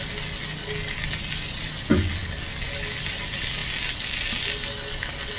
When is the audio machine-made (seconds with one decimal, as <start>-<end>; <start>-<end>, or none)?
none